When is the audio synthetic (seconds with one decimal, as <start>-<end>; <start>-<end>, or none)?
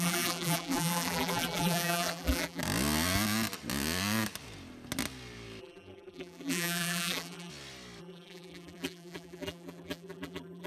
0.0-2.6; 5.6-7.5; 8.0-10.7